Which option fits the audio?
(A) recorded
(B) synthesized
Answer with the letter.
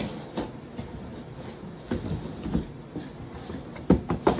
A